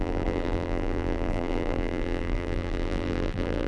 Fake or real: fake